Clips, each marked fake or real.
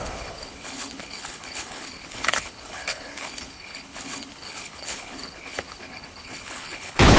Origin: fake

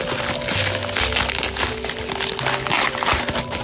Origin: real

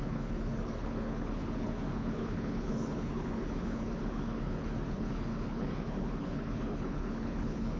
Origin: fake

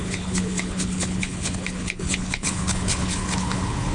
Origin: fake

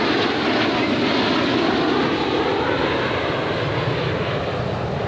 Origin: real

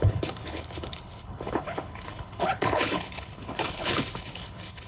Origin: fake